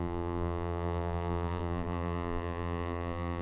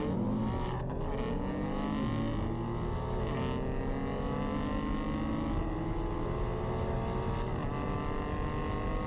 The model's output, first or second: first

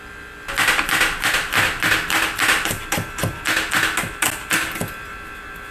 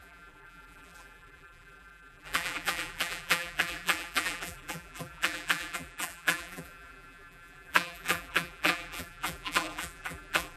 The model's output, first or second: second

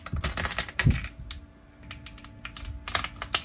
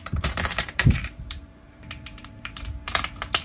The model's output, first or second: second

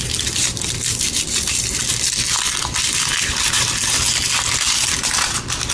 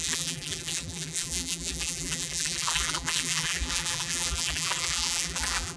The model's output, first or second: second